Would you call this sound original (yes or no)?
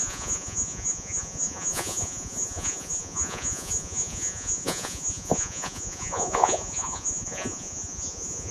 no